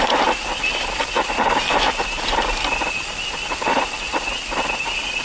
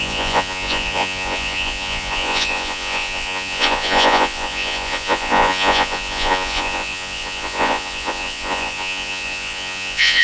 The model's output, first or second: second